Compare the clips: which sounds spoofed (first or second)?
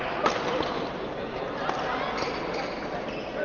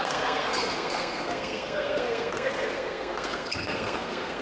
second